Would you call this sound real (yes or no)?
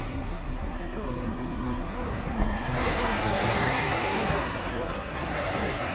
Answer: no